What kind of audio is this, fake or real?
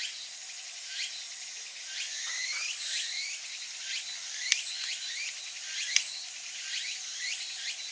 real